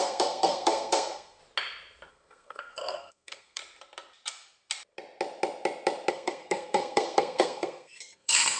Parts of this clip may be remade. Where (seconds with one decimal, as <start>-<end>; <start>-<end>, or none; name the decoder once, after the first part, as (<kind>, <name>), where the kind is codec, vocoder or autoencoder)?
0.0-1.4 (codec, SNAC); 2.1-3.6; 6.1-8.6